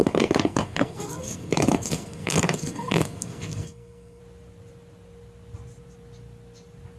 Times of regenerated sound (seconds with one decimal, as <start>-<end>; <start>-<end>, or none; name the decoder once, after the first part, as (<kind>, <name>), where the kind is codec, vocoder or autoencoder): 0.0-4.2 (codec, SNAC)